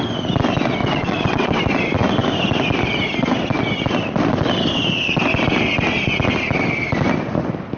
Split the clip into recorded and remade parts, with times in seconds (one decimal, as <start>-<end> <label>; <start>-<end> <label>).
0.0-0.8 recorded; 0.8-1.6 remade; 1.6-7.8 recorded